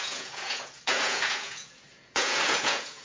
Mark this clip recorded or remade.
remade